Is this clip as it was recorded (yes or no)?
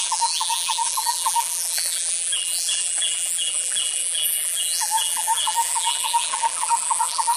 no